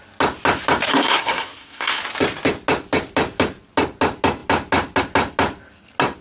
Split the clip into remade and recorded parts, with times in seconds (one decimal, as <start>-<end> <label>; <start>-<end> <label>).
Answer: 0.0-0.9 recorded; 0.9-2.0 remade; 2.0-6.2 recorded